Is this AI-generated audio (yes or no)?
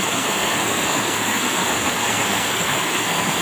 yes